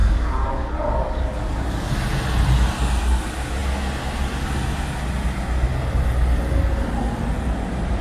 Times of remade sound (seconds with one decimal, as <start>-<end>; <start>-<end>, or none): 0.0-1.9